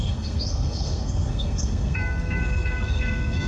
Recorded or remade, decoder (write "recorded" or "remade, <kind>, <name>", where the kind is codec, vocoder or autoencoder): remade, codec, SNAC